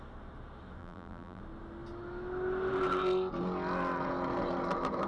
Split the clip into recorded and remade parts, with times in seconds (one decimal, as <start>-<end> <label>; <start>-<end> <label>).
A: 0.0-0.8 recorded; 0.8-1.4 remade; 1.4-5.1 recorded